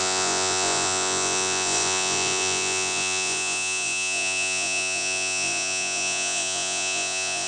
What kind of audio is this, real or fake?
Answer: fake